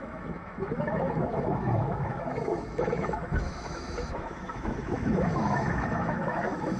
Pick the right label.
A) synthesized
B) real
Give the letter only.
A